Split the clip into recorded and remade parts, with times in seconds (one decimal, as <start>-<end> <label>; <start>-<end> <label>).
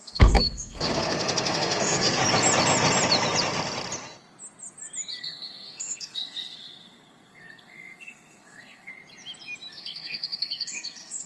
0.0-2.2 remade; 2.2-5.2 recorded; 5.2-8.9 remade; 8.9-9.7 recorded; 9.7-11.3 remade